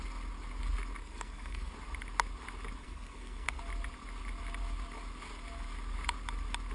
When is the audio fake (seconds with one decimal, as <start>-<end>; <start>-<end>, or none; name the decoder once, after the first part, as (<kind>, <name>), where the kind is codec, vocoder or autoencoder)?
1.0-1.7 (codec, SNAC); 2.8-3.6